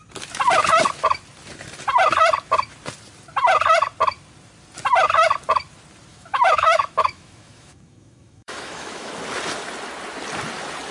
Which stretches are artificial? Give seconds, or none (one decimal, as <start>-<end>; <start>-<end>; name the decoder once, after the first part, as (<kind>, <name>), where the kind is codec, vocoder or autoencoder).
6.1-9.1 (autoencoder, DAC-VAE)